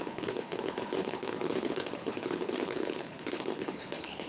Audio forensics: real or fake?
fake